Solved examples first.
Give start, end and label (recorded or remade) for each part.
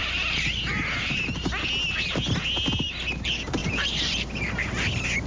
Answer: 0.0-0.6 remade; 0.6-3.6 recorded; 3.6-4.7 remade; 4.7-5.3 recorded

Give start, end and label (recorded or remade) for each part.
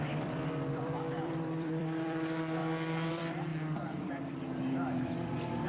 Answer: 0.0-2.6 remade; 2.6-3.1 recorded; 3.1-5.7 remade